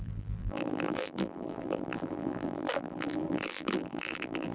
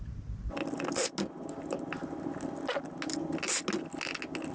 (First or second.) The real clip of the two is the second